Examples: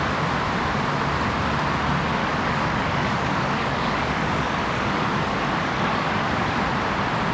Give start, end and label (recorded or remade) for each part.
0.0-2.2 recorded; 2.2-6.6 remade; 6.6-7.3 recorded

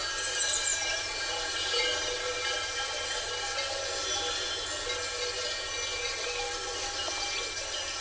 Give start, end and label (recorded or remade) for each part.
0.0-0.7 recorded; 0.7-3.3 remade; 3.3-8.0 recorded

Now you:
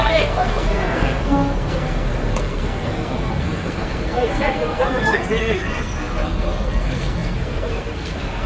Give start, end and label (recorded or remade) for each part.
0.0-8.5 remade